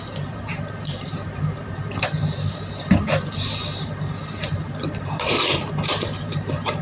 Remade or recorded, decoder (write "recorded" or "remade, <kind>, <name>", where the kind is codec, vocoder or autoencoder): remade, vocoder, BigVGAN v2